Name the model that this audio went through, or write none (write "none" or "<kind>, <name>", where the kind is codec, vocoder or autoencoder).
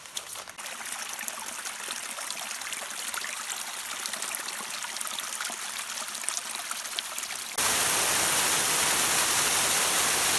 none